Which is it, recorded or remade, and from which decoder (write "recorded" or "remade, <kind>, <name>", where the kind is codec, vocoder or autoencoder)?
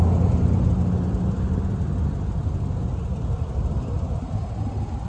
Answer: recorded